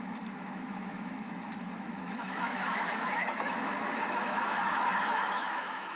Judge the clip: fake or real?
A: fake